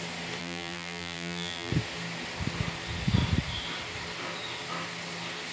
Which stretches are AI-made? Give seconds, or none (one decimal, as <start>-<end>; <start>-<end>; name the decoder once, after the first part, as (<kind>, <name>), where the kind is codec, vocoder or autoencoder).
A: 0.4-1.7 (vocoder, BigVGAN v2)